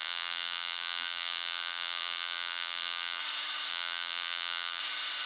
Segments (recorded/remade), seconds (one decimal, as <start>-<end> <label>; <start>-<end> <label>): 0.0-3.2 remade; 3.2-3.7 recorded; 3.7-4.8 remade; 4.8-5.3 recorded